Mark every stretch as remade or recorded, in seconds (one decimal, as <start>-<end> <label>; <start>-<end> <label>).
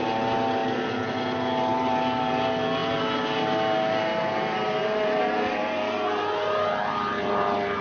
0.0-7.8 recorded